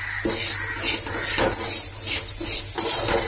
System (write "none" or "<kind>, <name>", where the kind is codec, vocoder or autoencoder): none